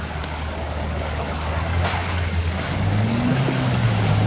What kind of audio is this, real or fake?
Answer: fake